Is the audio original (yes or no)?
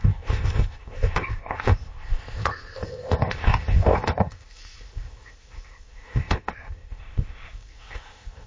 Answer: no